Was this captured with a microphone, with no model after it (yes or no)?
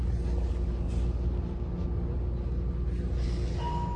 yes